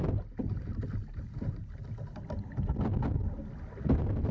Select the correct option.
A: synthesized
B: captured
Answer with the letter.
B